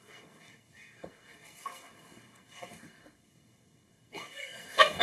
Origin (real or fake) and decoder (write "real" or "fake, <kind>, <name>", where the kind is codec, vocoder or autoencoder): fake, codec, SNAC